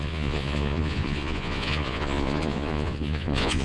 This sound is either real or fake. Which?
fake